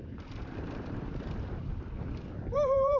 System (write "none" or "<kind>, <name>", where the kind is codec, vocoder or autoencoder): vocoder, BigVGAN v2